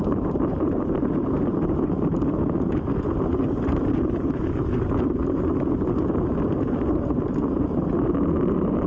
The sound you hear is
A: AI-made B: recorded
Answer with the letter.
A